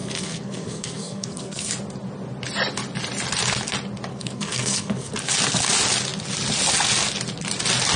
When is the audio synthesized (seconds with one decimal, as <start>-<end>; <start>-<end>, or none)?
0.0-1.7; 4.1-5.1